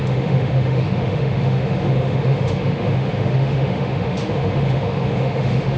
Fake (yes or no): yes